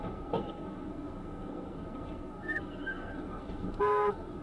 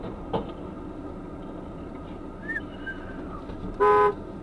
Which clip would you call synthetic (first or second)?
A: first